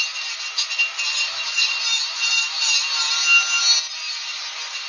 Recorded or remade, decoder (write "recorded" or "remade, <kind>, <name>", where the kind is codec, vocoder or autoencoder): recorded